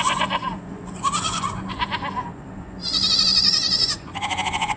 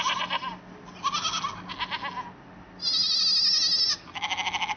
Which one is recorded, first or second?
second